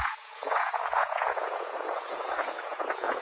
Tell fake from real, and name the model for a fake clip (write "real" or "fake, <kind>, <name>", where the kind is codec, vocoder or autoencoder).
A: fake, vocoder, Vocos